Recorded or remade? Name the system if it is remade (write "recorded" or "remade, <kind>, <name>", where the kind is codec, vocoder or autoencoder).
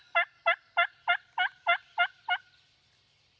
recorded